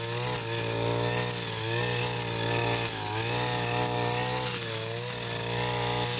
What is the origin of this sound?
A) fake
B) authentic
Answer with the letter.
B